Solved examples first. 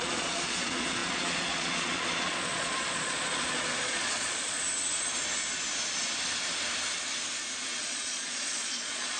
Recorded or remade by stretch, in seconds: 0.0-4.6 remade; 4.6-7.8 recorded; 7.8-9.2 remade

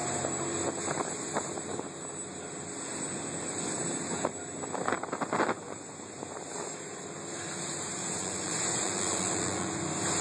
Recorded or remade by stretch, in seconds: 0.0-8.0 recorded; 8.0-9.7 remade; 9.7-10.2 recorded

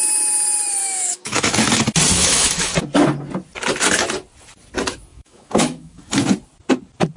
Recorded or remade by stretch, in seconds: 0.0-0.8 recorded; 0.8-1.7 remade; 1.7-2.1 recorded; 2.1-2.7 remade; 2.7-5.1 recorded; 5.1-6.1 remade; 6.1-7.2 recorded

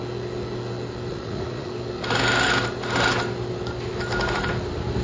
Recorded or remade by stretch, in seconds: 0.0-1.1 recorded; 1.1-1.7 remade; 1.7-5.0 recorded

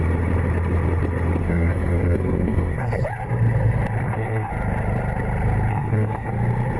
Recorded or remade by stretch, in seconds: 0.0-1.4 recorded; 1.4-3.0 remade; 3.0-4.0 recorded; 4.0-4.5 remade; 4.5-5.7 recorded; 5.7-6.3 remade; 6.3-6.8 recorded

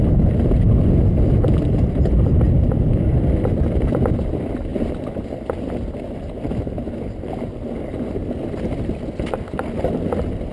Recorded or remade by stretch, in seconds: 0.0-10.5 recorded

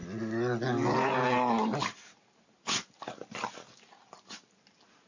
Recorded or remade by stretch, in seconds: 0.0-5.1 recorded